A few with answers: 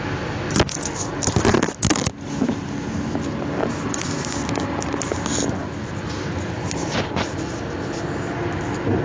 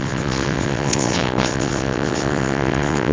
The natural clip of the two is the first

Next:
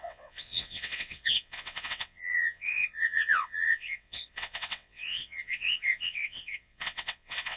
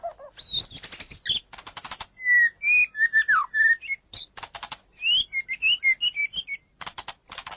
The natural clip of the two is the second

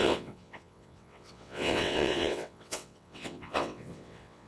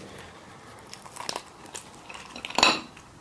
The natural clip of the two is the second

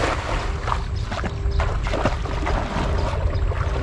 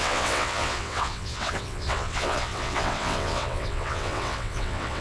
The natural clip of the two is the first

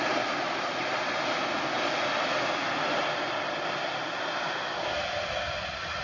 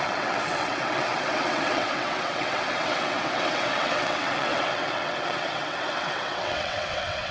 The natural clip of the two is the first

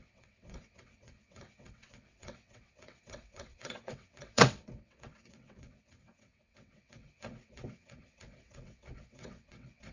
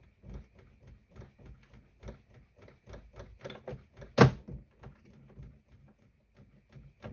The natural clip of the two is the second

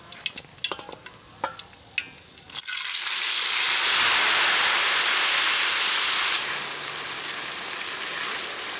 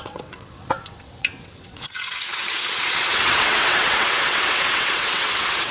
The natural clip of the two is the first